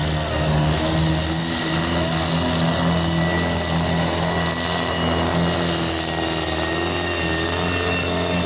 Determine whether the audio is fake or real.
real